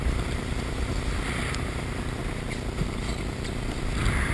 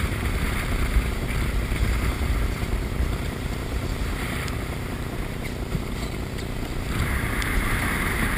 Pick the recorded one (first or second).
first